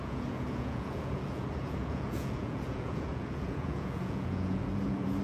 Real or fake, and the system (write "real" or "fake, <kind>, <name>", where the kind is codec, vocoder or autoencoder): fake, vocoder, Vocos